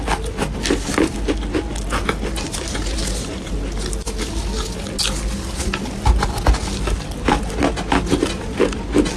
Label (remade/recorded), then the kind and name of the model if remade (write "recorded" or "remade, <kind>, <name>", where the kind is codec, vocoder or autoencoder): recorded